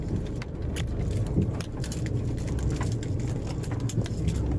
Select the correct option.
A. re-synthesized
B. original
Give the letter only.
B